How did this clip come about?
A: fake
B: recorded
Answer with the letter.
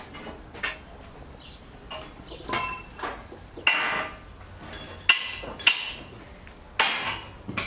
B